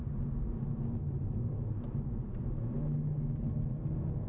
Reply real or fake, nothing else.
real